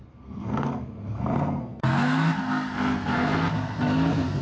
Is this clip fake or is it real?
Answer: fake